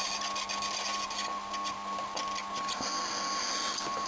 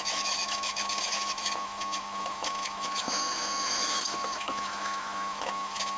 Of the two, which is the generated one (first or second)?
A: second